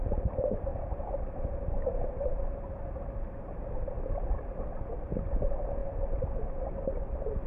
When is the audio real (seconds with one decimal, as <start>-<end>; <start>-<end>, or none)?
0.0-0.7; 3.1-7.5

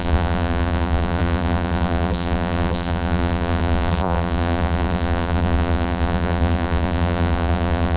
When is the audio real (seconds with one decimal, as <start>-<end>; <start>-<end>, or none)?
none

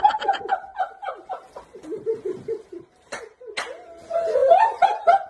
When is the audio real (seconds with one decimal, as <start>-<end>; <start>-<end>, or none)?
0.0-0.7; 3.2-4.4